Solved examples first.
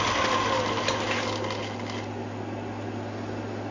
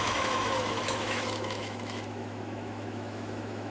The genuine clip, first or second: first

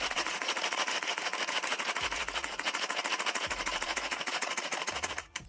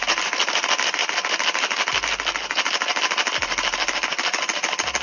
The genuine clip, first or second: second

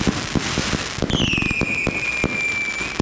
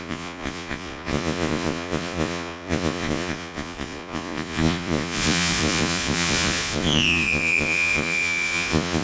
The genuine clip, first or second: first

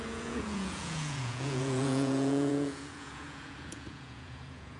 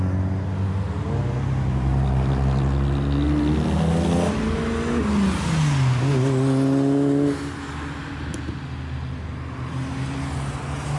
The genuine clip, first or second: second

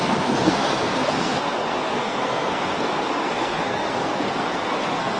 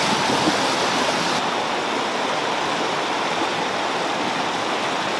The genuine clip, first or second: second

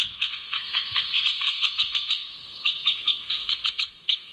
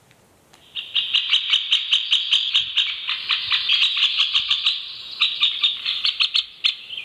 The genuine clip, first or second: second